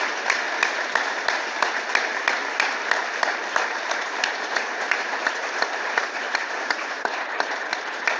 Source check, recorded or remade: remade